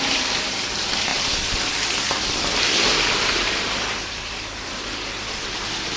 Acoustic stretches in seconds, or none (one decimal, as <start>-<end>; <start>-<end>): 0.0-1.1; 4.7-6.0

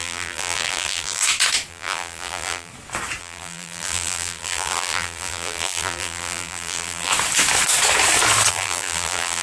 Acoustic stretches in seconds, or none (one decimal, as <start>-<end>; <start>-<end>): 1.2-1.7; 2.7-3.2; 7.1-8.5

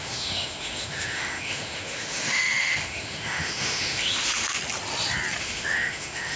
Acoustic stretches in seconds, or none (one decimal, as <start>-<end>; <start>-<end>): 4.6-5.4

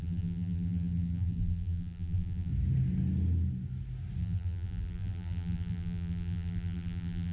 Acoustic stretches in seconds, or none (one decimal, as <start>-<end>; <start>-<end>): 2.5-4.2

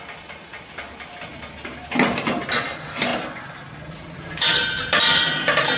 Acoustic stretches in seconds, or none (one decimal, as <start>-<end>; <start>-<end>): 1.3-2.5; 3.1-3.9

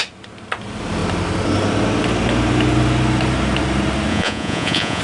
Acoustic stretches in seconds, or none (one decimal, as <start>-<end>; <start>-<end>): 0.0-4.1

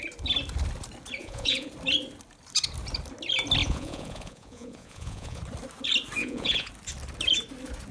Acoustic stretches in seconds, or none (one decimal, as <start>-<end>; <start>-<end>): 0.0-1.2; 1.7-3.6; 5.4-6.2; 6.7-7.9

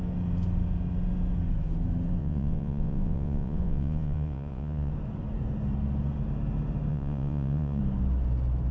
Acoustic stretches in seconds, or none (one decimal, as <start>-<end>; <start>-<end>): 0.0-2.2; 4.9-6.9; 7.8-8.7